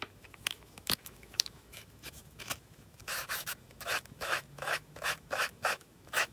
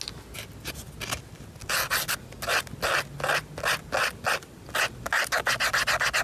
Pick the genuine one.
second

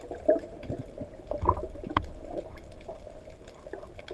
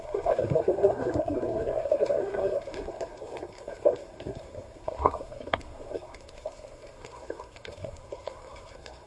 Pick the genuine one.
first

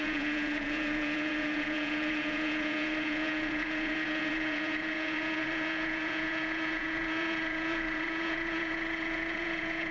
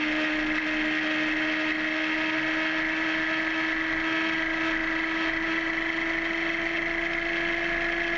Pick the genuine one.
second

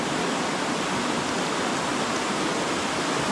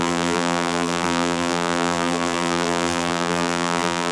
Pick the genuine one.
first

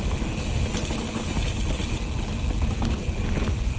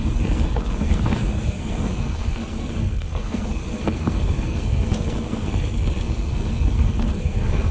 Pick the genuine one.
first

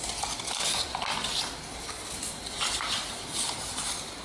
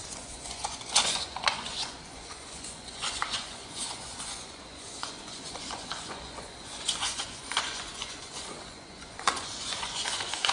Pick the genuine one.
first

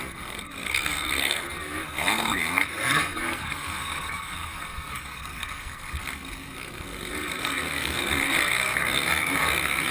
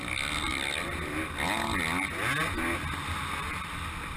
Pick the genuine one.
second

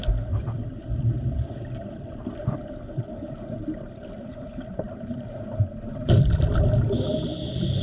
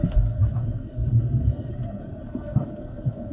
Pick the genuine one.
first